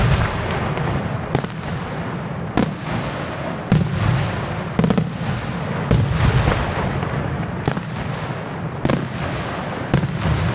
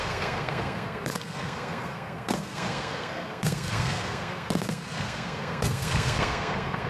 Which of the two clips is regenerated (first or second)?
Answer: second